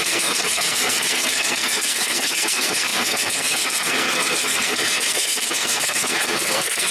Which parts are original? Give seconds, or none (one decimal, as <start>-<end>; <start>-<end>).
none